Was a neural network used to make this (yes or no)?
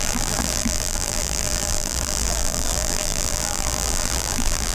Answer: yes